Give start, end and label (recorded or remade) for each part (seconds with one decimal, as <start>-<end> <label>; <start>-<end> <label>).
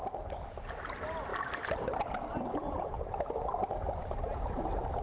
0.0-5.0 recorded